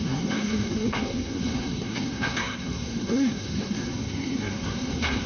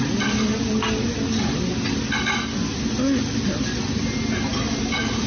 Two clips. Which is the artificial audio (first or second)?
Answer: first